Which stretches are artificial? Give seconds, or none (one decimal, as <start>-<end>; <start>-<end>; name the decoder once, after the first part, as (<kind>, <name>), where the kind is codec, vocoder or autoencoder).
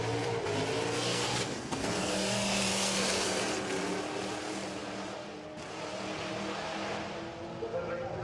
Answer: 1.1-3.4 (codec, SNAC)